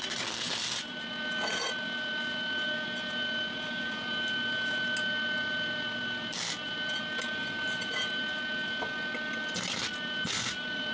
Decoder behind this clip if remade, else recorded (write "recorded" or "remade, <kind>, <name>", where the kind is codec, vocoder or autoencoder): recorded